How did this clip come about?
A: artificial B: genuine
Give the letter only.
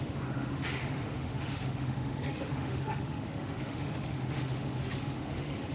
A